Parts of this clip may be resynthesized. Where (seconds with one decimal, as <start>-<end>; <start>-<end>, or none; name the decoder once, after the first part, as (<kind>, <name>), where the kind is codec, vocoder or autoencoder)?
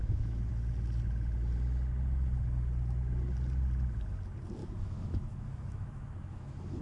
0.0-0.5 (autoencoder, DAC-VAE); 4.6-6.8